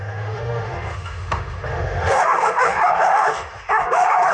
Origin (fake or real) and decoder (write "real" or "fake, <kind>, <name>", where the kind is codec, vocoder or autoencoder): fake, autoencoder, DAC-VAE